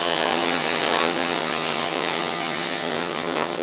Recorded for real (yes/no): no